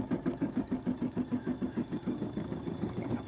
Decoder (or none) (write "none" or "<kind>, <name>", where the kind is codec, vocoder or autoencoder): codec, DAC